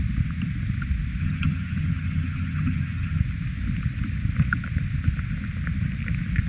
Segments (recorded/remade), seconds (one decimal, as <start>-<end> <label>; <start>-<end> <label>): 0.0-1.2 recorded; 1.2-3.2 remade; 3.2-6.5 recorded